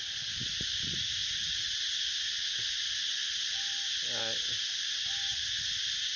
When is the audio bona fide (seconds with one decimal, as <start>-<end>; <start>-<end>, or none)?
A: 0.0-6.2

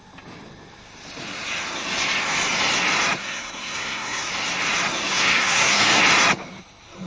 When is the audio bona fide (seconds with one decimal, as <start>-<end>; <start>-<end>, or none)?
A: 0.0-3.2; 4.3-5.1; 6.0-7.1

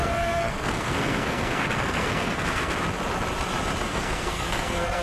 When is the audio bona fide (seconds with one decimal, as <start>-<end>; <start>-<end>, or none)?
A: 2.7-3.9